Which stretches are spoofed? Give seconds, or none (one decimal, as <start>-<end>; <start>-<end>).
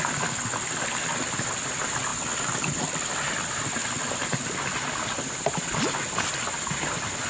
none